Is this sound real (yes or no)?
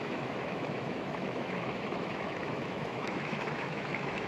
no